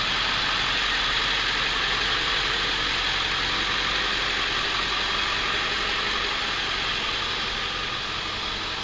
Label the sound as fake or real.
real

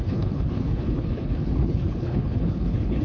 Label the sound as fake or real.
fake